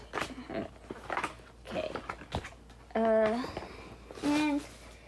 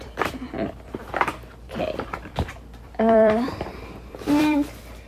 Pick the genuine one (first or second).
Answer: first